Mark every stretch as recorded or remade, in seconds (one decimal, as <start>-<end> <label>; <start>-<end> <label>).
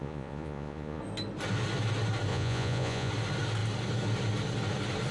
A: 0.0-1.0 remade; 1.0-2.3 recorded; 2.3-3.1 remade; 3.1-5.1 recorded